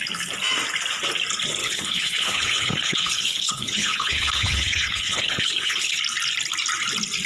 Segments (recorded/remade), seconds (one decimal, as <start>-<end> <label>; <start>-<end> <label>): 0.0-1.6 recorded; 1.6-6.0 remade; 6.0-7.3 recorded